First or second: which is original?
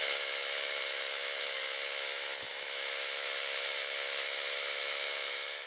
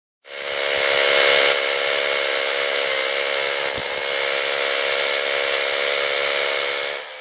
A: second